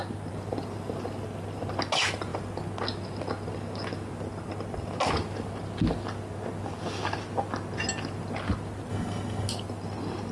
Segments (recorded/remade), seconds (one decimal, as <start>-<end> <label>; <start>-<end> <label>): 0.0-8.9 recorded; 8.9-9.5 remade; 9.5-10.3 recorded